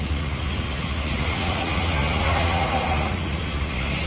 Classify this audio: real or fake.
fake